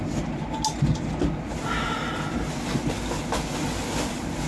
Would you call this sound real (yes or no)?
yes